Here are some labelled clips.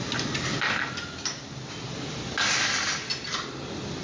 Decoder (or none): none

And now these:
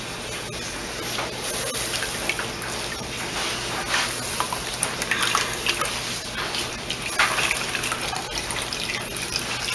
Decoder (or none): none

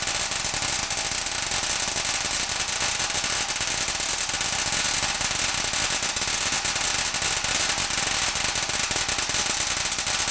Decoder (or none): none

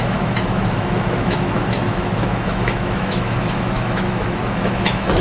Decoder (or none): autoencoder, DAC-VAE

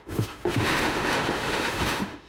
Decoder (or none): autoencoder, DAC-VAE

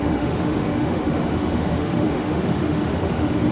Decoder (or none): autoencoder, DAC-VAE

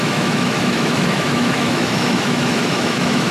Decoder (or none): autoencoder, DAC-VAE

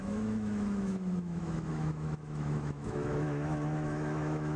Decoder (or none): autoencoder, DAC-VAE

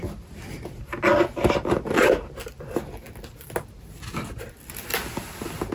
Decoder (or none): none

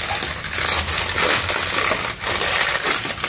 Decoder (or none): none